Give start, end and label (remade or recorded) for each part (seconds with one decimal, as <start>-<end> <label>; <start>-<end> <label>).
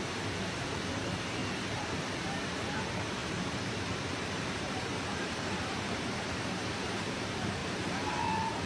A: 0.0-1.4 remade; 1.4-2.2 recorded; 2.2-8.7 remade